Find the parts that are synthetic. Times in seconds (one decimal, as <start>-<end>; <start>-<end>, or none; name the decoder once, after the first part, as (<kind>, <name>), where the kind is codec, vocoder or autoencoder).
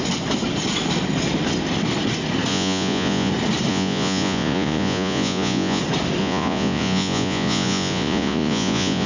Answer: 2.5-3.3 (vocoder, Vocos); 3.7-5.8; 6.2-9.1